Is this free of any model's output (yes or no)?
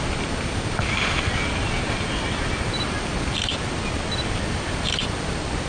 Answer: yes